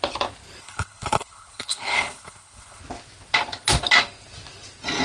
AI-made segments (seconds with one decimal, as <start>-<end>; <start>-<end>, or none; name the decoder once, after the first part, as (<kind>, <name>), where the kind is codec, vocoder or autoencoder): 0.6-2.8 (codec, HILCodec)